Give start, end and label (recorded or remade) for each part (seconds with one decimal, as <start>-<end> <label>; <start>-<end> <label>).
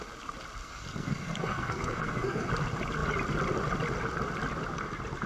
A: 0.0-0.6 recorded; 0.6-2.5 remade; 2.5-5.3 recorded